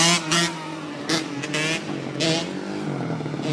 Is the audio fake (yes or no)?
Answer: no